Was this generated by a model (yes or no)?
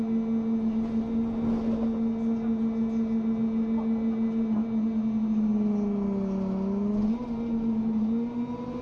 no